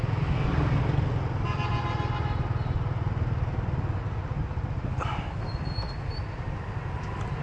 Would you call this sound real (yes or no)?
yes